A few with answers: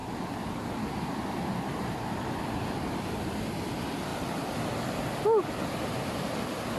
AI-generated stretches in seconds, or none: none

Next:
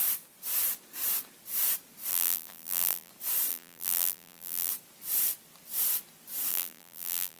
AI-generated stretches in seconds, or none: 2.1-3.1 (vocoder, BigVGAN v2); 3.5-4.7; 6.5-7.4

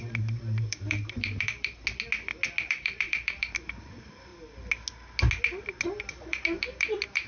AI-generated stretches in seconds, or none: 0.0-1.8 (vocoder, BigVGAN v2); 2.7-4.3; 6.1-7.3

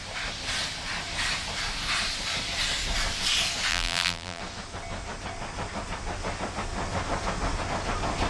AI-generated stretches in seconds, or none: 3.7-4.4 (vocoder, BigVGAN v2)

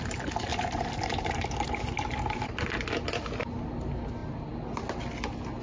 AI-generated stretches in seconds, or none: 0.5-2.6 (vocoder, BigVGAN v2)

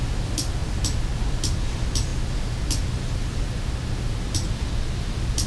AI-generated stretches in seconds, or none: none